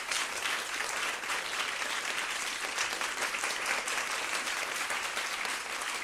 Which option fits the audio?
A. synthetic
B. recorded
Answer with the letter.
A